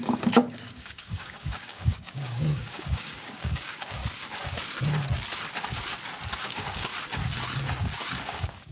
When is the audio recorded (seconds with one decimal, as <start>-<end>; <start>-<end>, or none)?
4.0-6.4; 6.9-8.2